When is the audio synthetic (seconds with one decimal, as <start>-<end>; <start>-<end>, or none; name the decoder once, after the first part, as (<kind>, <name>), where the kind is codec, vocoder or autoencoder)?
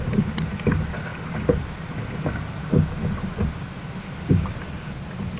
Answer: none